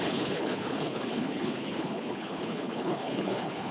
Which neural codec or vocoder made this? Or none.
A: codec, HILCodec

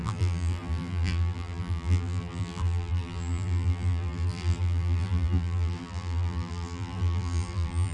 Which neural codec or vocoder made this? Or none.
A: vocoder, BigVGAN v2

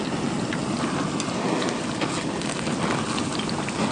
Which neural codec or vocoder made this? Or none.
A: none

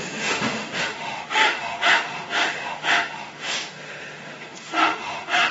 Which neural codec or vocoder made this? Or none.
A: autoencoder, DAC-VAE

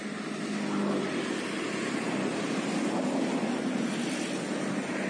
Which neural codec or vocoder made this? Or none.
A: none